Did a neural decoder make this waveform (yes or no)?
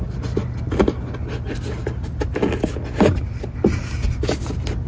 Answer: no